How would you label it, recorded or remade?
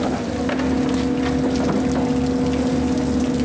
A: recorded